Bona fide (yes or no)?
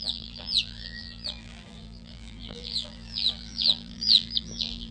no